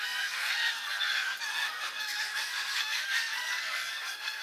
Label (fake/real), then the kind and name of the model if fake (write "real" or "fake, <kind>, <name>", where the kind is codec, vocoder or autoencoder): fake, codec, SNAC